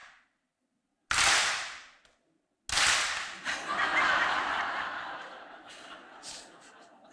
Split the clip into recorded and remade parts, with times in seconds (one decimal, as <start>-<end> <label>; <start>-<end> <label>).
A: 0.0-7.1 recorded